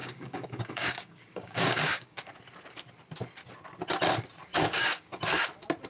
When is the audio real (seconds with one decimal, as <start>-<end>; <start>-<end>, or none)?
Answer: 2.3-4.5; 5.2-5.9